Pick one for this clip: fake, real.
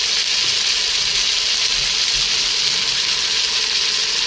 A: real